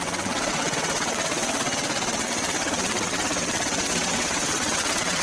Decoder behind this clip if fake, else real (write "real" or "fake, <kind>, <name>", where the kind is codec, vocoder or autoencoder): fake, vocoder, WaveNeXt